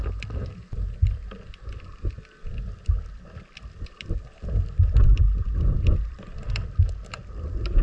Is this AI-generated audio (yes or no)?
yes